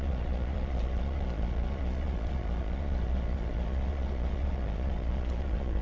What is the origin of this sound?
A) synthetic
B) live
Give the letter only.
A